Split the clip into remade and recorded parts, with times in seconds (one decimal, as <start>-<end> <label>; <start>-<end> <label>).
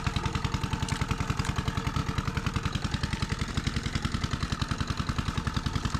0.0-6.0 recorded